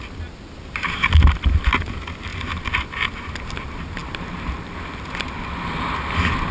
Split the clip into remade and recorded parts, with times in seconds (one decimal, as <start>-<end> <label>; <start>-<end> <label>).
0.0-6.5 recorded